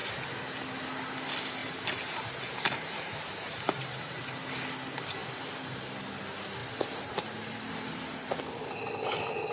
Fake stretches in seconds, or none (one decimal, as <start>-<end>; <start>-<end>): 1.6-4.2